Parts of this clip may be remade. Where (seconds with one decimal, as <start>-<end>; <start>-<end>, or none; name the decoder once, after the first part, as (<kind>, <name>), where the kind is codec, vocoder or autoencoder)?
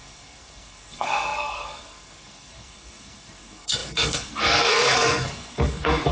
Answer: 0.0-6.1 (codec, SNAC)